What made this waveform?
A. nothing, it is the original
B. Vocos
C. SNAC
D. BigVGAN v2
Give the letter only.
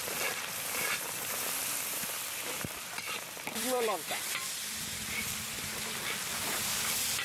D